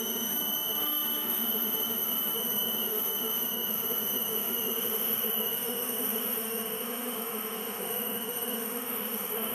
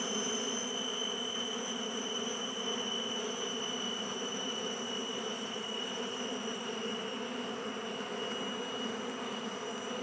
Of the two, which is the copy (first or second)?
first